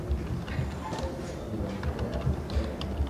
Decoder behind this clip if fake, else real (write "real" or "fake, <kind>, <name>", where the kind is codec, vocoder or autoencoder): real